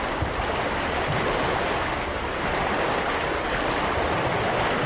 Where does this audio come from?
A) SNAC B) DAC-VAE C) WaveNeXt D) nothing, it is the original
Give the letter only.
D